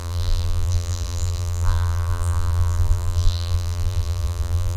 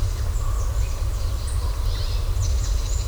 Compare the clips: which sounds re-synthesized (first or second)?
first